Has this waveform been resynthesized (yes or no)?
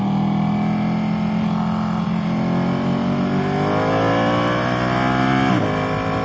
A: no